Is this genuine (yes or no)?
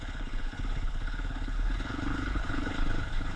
no